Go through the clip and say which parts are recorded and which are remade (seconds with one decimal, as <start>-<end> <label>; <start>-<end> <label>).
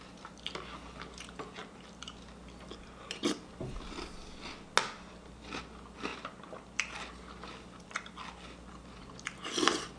0.0-10.0 recorded